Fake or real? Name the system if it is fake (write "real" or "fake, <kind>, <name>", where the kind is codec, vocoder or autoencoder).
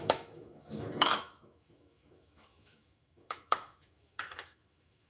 fake, autoencoder, DAC-VAE